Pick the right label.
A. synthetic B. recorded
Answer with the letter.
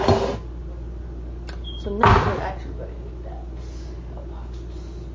B